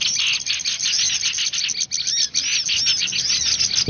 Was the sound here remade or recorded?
recorded